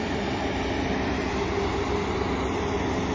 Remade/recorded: recorded